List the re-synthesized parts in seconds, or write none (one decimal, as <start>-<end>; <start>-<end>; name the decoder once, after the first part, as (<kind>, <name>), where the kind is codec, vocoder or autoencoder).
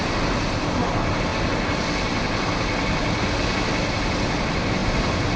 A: none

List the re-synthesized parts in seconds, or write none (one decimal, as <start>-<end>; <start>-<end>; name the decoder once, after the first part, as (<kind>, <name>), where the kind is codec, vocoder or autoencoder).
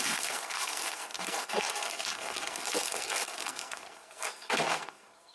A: 0.0-5.3 (codec, SNAC)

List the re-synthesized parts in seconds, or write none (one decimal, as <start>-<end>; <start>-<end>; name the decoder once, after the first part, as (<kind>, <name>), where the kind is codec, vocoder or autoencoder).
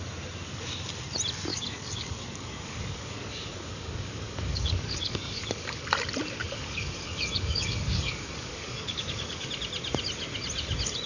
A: 1.5-5.8 (codec, DAC); 6.4-9.5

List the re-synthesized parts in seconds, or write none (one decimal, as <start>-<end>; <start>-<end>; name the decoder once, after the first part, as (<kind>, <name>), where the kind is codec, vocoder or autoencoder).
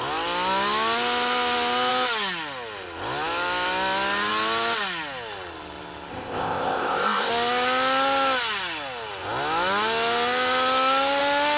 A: 6.1-7.3 (codec, ZipCodec)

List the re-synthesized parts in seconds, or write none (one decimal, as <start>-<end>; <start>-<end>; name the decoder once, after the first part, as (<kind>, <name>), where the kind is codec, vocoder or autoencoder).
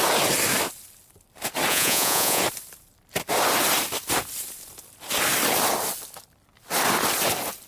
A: 1.7-2.4 (vocoder, Vocos)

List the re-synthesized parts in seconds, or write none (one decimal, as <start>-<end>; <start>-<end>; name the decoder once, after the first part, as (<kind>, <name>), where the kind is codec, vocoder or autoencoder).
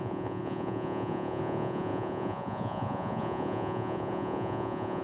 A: 0.0-5.0 (vocoder, Vocos)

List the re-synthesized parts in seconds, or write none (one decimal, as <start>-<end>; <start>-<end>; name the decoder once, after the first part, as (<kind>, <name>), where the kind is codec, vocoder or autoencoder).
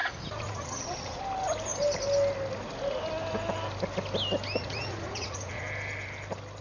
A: 0.0-1.2 (vocoder, Vocos); 4.6-5.6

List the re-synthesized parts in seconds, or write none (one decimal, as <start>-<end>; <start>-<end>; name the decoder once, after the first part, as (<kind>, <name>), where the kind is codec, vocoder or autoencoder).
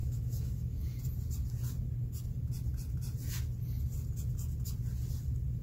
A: 0.0-1.0 (autoencoder, DAC-VAE)